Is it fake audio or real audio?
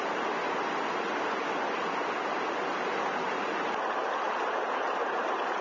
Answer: real